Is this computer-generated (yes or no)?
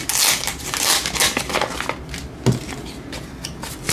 no